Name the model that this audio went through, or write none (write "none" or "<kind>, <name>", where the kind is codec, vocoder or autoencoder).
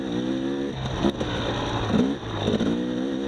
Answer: none